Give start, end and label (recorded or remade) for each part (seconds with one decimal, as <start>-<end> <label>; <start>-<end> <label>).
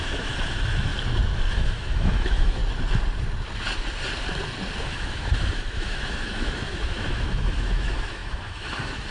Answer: 0.0-0.9 remade; 0.9-1.5 recorded; 1.5-2.6 remade; 2.6-4.8 recorded; 4.8-9.1 remade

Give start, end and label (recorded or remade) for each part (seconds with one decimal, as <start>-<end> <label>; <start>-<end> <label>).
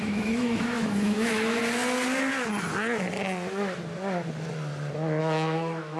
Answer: 0.0-1.6 remade; 1.6-5.2 recorded; 5.2-6.0 remade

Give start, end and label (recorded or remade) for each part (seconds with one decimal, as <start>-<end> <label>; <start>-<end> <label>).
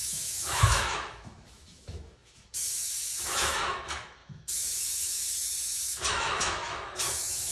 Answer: 0.0-7.5 remade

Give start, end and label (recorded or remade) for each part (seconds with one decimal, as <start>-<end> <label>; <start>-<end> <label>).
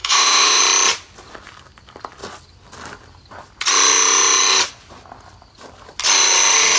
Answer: 0.0-0.6 remade; 0.6-6.8 recorded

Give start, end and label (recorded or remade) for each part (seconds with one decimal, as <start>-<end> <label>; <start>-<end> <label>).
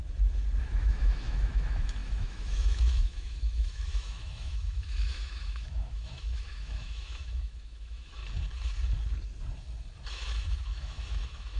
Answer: 0.0-0.6 recorded; 0.6-8.2 remade; 8.2-10.1 recorded; 10.1-11.6 remade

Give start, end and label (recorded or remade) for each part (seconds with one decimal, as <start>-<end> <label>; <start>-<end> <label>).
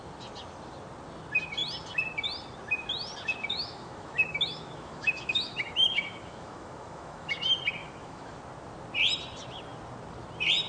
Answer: 0.0-3.5 recorded; 3.5-7.3 remade; 7.3-7.8 recorded; 7.8-8.4 remade; 8.4-10.7 recorded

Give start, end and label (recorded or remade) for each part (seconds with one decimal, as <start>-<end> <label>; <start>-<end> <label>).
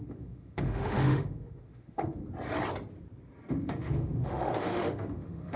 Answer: 0.0-2.2 remade; 2.2-3.5 recorded; 3.5-5.6 remade